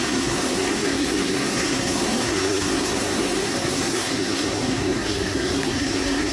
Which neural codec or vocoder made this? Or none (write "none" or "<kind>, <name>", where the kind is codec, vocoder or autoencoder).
codec, SNAC